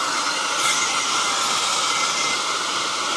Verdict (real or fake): real